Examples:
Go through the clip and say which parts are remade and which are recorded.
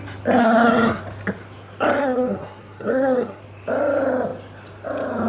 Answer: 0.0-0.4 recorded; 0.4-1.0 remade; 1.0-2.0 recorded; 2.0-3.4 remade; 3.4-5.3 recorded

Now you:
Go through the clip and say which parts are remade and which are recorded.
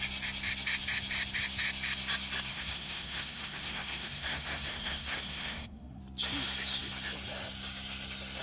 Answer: 0.0-2.5 recorded; 2.5-6.0 remade; 6.0-8.4 recorded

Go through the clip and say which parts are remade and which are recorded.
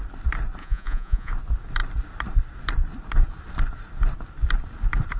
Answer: 0.0-0.6 recorded; 0.6-1.3 remade; 1.3-5.2 recorded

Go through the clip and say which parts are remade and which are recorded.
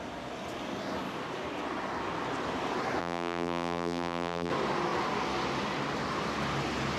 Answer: 0.0-3.0 recorded; 3.0-4.5 remade; 4.5-7.0 recorded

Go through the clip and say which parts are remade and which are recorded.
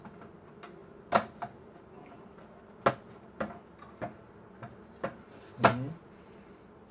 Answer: 0.0-6.9 recorded